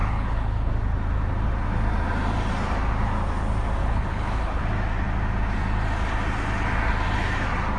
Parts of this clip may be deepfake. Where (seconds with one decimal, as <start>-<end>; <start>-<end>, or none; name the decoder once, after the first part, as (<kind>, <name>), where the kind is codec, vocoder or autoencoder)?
0.0-0.7 (codec, HILCodec); 3.8-4.6

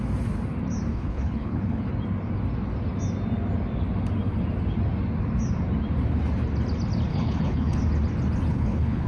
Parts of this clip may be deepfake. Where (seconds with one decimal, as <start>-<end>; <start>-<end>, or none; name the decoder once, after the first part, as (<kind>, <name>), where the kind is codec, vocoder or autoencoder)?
0.9-1.9 (codec, HILCodec); 7.1-7.8; 8.5-9.1

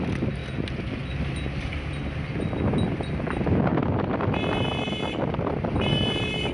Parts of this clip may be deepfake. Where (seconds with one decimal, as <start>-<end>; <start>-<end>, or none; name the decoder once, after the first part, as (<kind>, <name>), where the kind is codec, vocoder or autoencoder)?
none

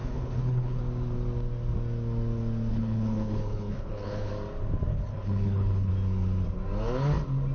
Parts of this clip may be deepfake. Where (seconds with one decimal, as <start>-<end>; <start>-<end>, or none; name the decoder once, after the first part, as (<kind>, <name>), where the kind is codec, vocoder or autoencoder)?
0.0-0.8 (codec, HILCodec); 2.7-4.3; 4.9-5.9